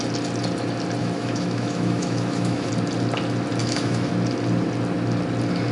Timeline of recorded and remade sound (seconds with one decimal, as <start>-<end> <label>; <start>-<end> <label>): 0.0-1.0 recorded; 1.0-2.7 remade; 2.7-3.6 recorded; 3.6-4.1 remade; 4.1-5.7 recorded